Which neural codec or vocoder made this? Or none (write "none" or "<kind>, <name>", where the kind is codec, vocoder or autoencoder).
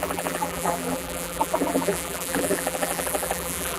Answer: vocoder, BigVGAN v2